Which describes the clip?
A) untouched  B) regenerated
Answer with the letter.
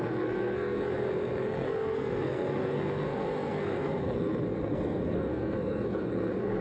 B